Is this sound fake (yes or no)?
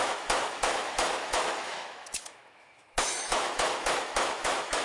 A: yes